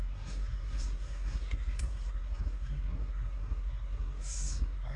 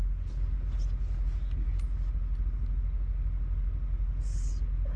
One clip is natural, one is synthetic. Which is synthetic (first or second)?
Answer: first